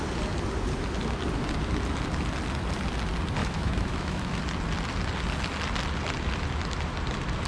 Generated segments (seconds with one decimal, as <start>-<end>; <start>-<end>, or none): 3.4-4.4